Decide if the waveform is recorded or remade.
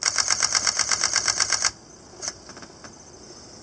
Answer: recorded